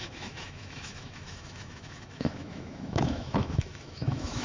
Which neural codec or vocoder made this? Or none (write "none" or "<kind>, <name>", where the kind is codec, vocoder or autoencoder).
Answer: autoencoder, DAC-VAE